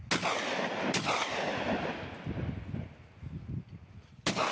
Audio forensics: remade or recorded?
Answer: recorded